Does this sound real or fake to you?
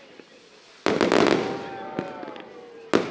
real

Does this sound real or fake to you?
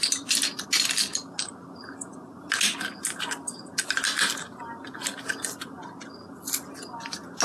real